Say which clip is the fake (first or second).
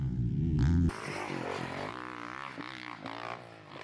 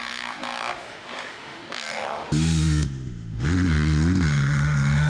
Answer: second